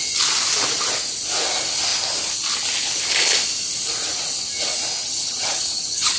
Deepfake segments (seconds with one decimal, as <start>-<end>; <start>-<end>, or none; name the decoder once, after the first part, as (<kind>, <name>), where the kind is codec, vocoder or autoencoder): 5.0-6.2 (vocoder, HiFi-GAN)